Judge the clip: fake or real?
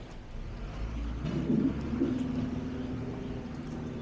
real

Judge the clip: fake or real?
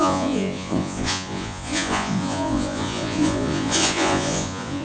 fake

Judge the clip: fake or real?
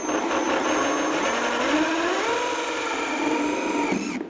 real